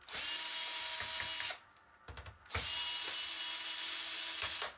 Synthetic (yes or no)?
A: no